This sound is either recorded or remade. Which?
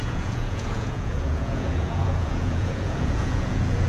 remade